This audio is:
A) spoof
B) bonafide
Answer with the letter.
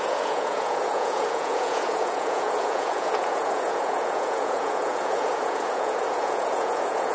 A